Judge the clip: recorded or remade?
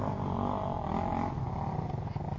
recorded